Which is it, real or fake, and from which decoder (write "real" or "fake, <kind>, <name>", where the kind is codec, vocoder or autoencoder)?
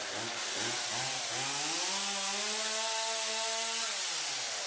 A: real